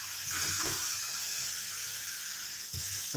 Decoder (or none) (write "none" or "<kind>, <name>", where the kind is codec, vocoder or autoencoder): codec, SNAC